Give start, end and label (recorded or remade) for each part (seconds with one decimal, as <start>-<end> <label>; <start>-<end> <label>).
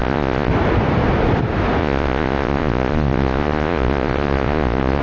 0.0-0.5 remade; 0.5-1.8 recorded; 1.8-5.0 remade